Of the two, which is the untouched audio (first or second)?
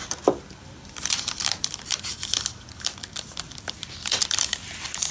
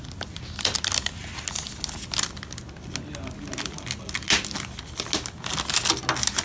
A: second